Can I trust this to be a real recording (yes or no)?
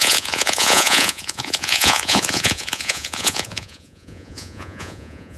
no